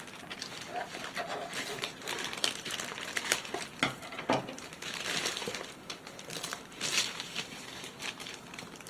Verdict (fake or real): fake